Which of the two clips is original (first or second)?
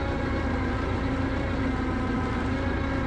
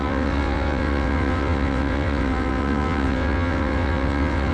first